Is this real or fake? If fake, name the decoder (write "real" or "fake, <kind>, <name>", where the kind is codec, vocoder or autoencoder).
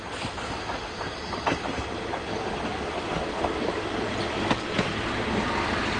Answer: real